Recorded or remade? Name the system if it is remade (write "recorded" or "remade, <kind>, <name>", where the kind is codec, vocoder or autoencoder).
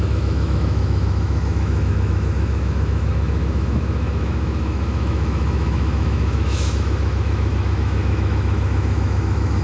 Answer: remade, autoencoder, DAC-VAE